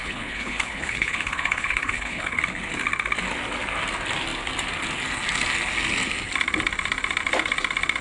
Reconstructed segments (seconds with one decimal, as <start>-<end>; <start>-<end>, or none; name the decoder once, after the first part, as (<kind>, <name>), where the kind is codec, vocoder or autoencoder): 0.0-2.4 (codec, HILCodec)